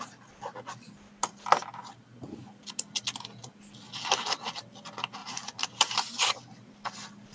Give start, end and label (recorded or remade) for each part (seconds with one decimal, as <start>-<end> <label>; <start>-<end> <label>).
0.0-5.2 recorded; 5.2-6.4 remade; 6.4-7.3 recorded